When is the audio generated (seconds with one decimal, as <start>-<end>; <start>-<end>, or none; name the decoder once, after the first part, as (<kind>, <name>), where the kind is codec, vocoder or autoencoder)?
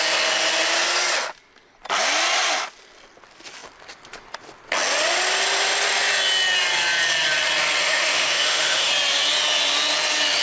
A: 7.8-8.9 (autoencoder, DAC-VAE)